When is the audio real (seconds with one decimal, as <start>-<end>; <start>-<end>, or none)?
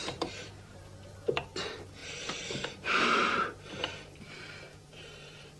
0.8-2.0